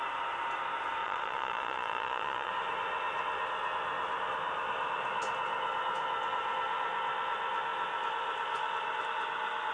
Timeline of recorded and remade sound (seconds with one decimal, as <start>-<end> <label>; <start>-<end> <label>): 0.0-1.0 recorded; 1.0-2.5 remade; 2.5-9.7 recorded